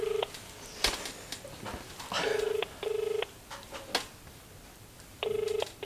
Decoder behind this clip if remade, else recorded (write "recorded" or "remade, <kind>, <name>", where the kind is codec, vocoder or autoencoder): recorded